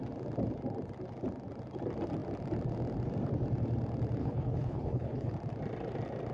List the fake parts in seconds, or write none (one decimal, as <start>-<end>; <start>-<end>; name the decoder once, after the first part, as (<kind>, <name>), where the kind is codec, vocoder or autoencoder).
4.2-5.3 (codec, HILCodec)